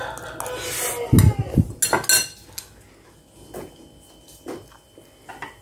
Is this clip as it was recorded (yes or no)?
yes